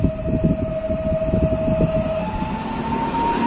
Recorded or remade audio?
recorded